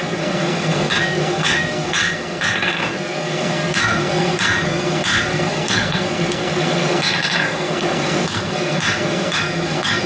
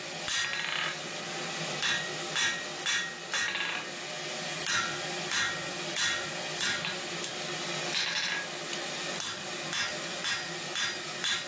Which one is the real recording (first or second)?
second